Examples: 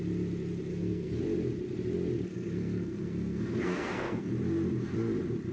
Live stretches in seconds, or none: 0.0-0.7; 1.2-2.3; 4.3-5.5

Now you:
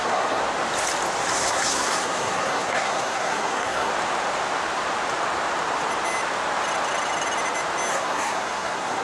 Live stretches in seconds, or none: 0.4-1.3; 3.9-7.9